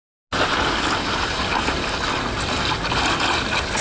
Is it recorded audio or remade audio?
recorded